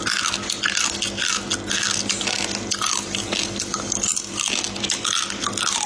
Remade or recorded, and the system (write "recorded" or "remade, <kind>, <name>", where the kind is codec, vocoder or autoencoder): recorded